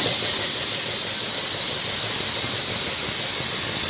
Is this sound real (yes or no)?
yes